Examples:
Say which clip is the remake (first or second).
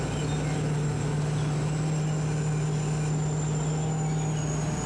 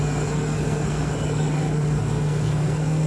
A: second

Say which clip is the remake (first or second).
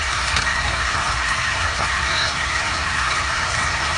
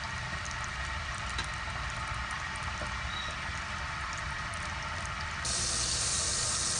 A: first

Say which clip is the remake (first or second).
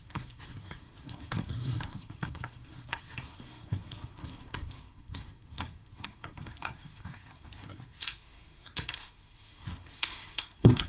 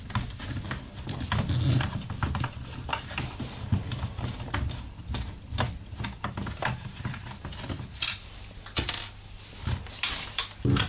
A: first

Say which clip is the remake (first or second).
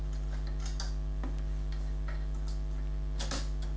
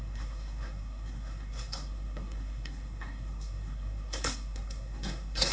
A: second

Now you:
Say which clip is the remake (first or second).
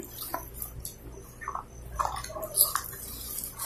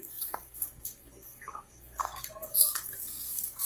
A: second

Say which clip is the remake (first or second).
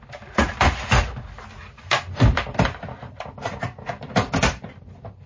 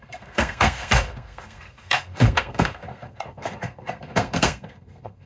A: second